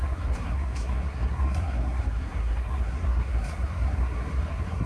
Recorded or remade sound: remade